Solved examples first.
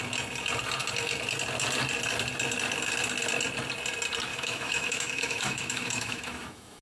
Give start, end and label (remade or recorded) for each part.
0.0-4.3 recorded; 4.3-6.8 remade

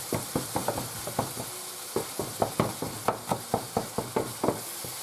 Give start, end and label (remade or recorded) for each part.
0.0-5.0 recorded

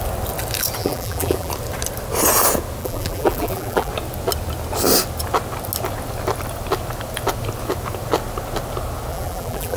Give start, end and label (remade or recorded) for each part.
0.0-0.8 recorded; 0.8-1.5 remade; 1.5-2.8 recorded; 2.8-3.9 remade; 3.9-9.1 recorded; 9.1-9.8 remade

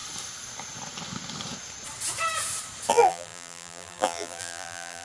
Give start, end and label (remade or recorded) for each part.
0.0-2.9 recorded; 2.9-5.0 remade